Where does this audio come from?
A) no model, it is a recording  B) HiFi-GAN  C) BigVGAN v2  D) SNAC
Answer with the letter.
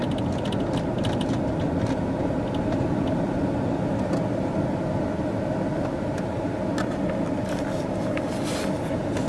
A